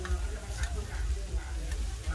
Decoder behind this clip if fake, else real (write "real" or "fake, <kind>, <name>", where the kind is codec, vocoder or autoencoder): real